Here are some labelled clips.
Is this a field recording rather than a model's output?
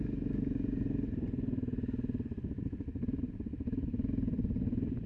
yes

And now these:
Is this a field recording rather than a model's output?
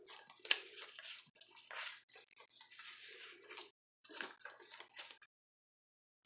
yes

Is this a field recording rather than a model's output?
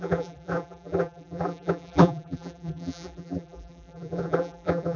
no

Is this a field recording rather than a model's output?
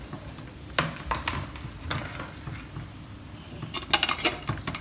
yes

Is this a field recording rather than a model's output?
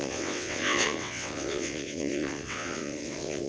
no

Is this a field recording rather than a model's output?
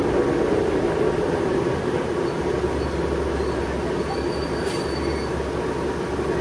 yes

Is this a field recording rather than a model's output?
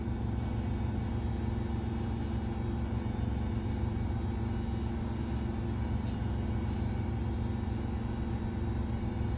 yes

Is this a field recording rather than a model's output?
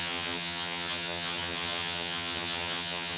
no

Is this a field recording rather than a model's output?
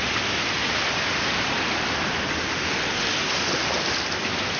yes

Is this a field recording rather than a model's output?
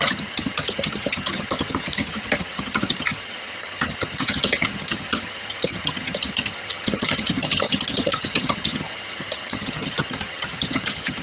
no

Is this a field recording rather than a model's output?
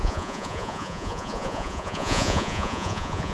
no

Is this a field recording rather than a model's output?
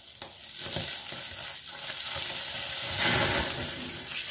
yes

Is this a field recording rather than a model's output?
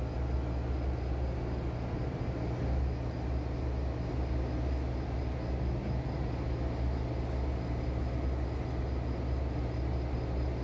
yes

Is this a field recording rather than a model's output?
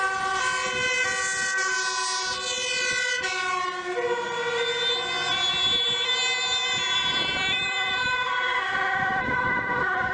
yes